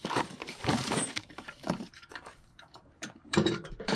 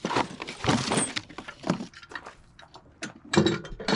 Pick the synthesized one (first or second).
first